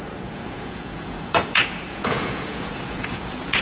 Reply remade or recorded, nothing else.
remade